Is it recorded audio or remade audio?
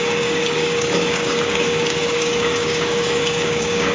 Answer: remade